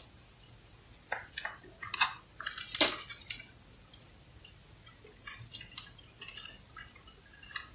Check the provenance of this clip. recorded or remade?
recorded